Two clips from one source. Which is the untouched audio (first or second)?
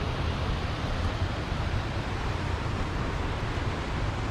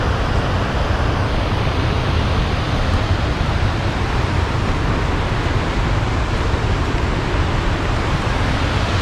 second